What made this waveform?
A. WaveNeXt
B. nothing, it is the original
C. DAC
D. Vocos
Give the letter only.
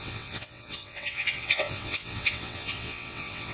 A